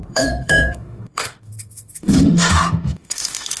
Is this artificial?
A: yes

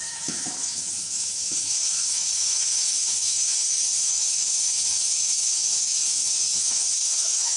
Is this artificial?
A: yes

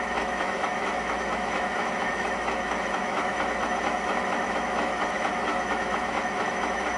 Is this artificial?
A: yes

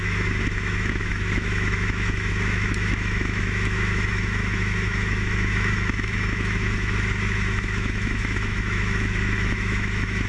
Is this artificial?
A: yes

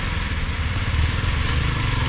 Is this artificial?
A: no